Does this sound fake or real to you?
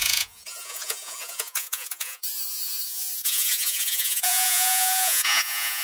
fake